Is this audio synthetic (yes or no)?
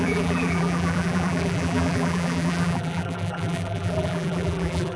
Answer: yes